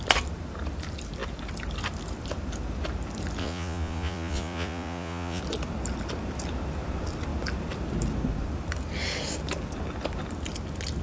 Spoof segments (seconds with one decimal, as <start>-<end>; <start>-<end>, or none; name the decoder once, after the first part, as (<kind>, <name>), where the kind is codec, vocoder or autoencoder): 3.4-5.4 (vocoder, Vocos)